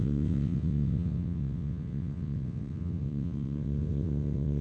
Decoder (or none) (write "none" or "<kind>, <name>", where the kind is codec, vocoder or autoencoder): vocoder, WaveNeXt